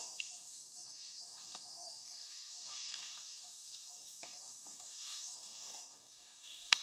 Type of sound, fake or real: fake